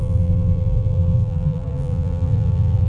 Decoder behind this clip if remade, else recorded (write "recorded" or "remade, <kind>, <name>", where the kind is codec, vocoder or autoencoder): remade, vocoder, BigVGAN v2